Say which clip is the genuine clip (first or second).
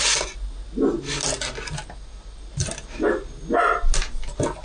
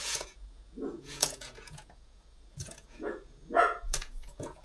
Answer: first